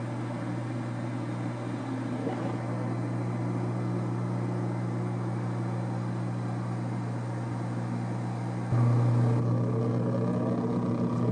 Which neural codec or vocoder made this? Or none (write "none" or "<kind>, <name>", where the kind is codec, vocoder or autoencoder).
none